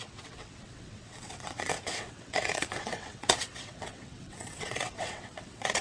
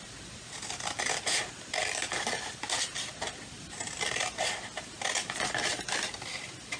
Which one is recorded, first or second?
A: second